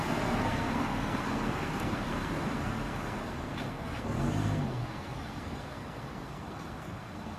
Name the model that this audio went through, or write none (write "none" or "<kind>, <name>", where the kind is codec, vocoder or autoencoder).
codec, SNAC